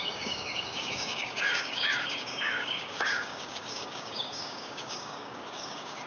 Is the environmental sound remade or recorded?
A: remade